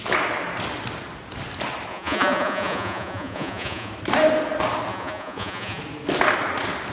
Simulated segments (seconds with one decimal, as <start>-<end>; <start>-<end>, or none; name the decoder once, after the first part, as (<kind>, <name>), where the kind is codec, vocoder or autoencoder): 1.9-3.9 (vocoder, Vocos); 4.9-5.8